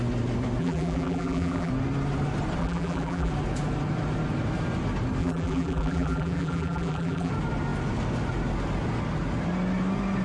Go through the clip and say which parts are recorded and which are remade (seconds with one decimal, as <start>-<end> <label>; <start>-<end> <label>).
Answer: 0.0-0.6 recorded; 0.6-1.7 remade; 1.7-2.6 recorded; 2.6-3.3 remade; 3.3-5.2 recorded; 5.2-7.3 remade; 7.3-10.2 recorded